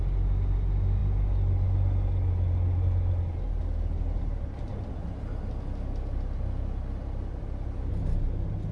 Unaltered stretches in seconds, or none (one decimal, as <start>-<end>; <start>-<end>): 0.0-8.7